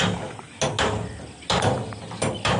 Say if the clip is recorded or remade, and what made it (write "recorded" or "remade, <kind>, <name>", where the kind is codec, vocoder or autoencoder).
recorded